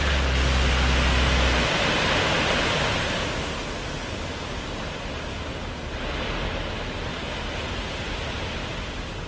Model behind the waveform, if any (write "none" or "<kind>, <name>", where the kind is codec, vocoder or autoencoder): none